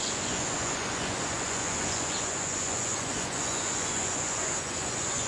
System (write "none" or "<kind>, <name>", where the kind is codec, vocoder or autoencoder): vocoder, Vocos